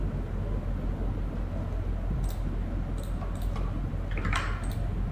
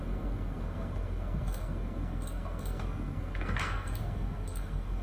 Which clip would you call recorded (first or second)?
first